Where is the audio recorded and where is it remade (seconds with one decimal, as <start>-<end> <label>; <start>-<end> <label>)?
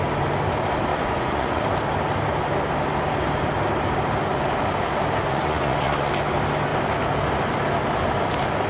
0.0-0.9 recorded; 0.9-1.6 remade; 1.6-5.3 recorded; 5.3-6.1 remade; 6.1-8.7 recorded